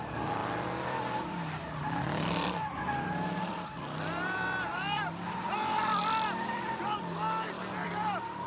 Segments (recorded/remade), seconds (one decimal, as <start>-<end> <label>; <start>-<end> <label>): 0.0-6.0 remade; 6.0-7.7 recorded; 7.7-8.5 remade